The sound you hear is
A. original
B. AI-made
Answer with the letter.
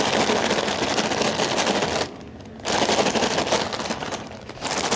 A